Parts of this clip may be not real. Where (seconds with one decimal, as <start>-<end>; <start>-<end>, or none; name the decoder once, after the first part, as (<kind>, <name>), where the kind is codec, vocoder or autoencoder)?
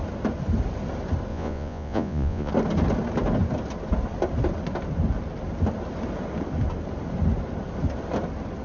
1.3-2.5 (vocoder, Vocos)